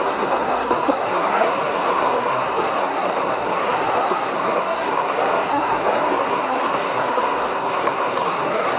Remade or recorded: remade